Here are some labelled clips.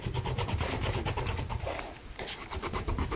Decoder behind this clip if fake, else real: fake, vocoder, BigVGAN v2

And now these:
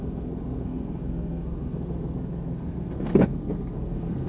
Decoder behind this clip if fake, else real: fake, codec, SNAC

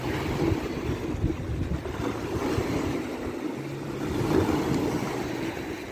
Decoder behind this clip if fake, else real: real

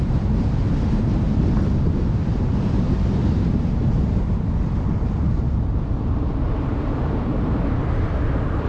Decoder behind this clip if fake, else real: fake, vocoder, BigVGAN v2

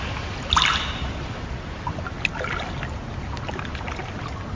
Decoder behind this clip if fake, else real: real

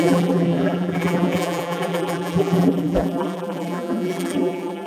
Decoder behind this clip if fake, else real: fake, vocoder, BigVGAN v2